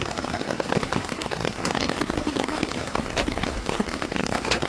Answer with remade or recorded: remade